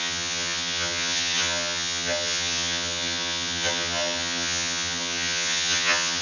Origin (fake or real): fake